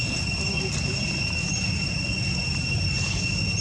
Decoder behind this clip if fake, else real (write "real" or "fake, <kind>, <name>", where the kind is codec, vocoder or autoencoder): real